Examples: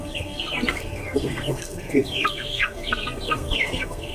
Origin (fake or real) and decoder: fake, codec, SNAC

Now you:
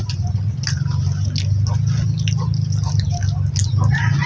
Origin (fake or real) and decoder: real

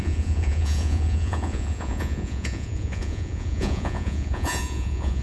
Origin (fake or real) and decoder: fake, vocoder, Vocos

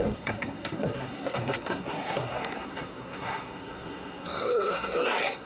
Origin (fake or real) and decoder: fake, codec, SNAC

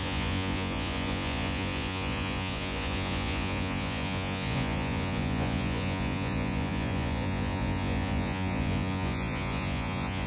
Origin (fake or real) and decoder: fake, vocoder, Vocos